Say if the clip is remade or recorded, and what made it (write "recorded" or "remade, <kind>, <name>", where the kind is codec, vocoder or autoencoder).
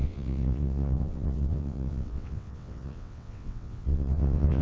remade, vocoder, WaveNeXt